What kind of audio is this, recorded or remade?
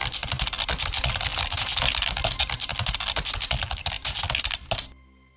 recorded